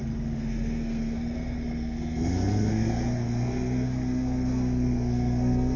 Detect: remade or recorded remade